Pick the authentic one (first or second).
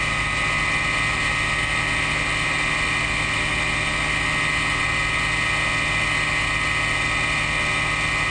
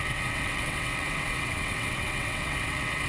first